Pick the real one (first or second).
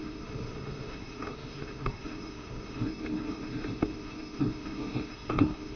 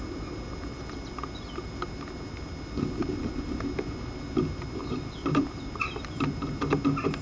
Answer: second